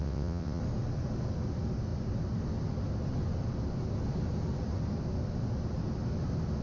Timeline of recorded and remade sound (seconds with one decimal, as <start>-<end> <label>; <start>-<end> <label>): 0.0-0.6 remade; 0.6-6.6 recorded